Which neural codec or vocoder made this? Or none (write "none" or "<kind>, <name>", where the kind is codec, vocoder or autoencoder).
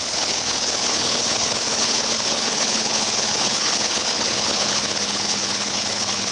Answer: codec, HILCodec